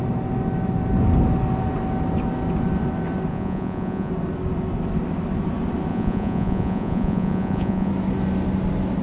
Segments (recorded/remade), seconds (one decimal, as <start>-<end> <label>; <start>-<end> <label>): 0.0-3.3 recorded; 3.3-4.1 remade; 4.1-5.9 recorded; 5.9-7.9 remade; 7.9-9.0 recorded